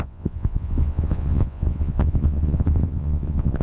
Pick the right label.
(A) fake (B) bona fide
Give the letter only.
A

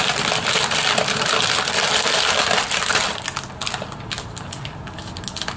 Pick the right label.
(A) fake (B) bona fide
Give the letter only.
B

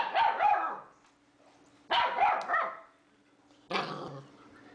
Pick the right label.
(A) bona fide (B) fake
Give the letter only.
A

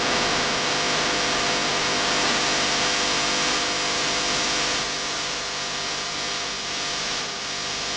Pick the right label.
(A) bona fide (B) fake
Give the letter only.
A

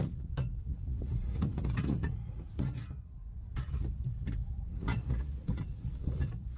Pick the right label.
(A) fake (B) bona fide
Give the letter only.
A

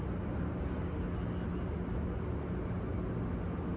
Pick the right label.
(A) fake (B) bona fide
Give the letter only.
B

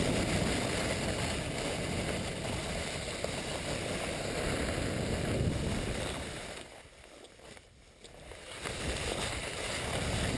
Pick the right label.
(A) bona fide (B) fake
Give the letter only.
A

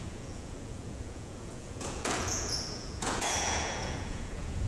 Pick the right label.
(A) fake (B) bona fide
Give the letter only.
A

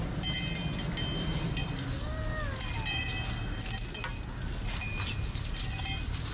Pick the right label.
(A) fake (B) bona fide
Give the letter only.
B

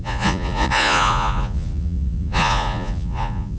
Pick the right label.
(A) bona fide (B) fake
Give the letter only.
B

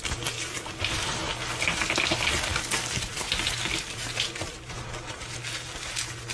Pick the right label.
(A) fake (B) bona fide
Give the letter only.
B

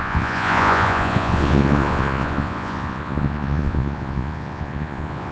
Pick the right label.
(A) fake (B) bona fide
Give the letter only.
A